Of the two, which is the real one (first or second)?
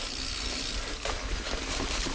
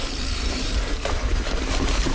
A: first